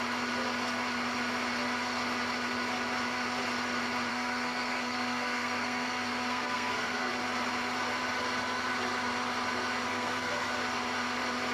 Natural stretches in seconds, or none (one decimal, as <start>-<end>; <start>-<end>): 0.0-4.1; 7.1-9.9; 10.5-11.5